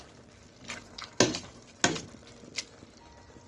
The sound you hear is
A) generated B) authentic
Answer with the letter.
B